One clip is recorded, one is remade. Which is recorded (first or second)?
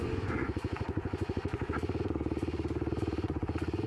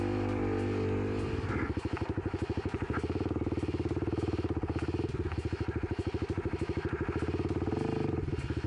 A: second